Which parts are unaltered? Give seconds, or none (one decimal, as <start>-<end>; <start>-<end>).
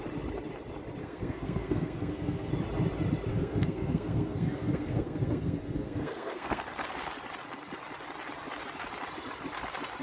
0.0-1.0; 2.5-3.3; 6.6-10.0